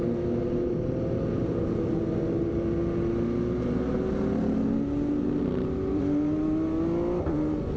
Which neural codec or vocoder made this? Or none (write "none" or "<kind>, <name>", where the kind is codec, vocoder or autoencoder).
none